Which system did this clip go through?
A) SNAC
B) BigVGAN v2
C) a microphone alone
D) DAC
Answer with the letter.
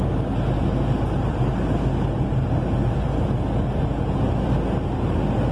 C